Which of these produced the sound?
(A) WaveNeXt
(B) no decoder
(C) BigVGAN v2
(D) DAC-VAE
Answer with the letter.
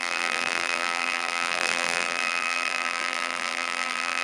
C